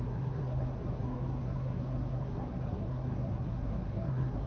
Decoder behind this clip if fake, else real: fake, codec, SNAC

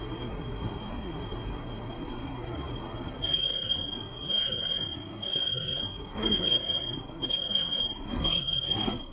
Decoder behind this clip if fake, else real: fake, codec, SNAC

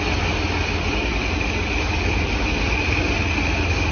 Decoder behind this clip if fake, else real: real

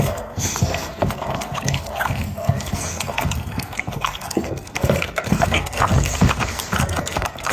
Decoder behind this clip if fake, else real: fake, codec, SNAC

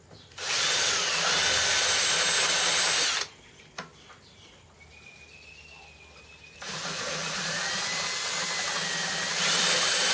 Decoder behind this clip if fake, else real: real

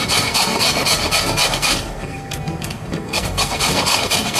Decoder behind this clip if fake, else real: fake, codec, SNAC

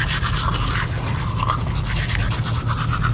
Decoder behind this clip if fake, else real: real